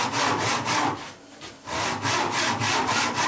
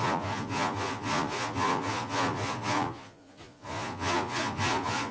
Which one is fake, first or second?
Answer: second